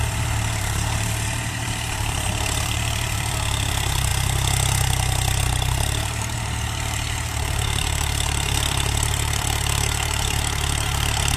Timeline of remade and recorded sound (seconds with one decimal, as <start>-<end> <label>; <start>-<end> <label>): 0.0-4.1 remade; 4.1-5.4 recorded; 5.4-11.4 remade